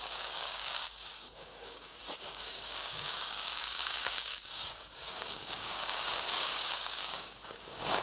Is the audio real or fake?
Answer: fake